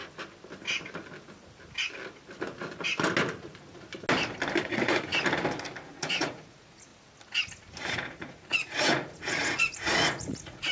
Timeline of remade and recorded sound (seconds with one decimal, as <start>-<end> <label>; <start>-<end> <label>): 0.0-4.6 recorded; 4.6-5.1 remade; 5.1-5.9 recorded; 5.9-6.9 remade; 6.9-7.9 recorded; 7.9-10.7 remade